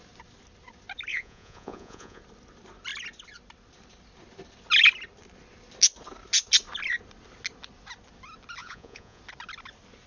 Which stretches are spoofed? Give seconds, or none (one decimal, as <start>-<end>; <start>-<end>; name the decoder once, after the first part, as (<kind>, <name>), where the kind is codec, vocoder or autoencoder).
1.1-2.2 (vocoder, Vocos); 8.6-9.2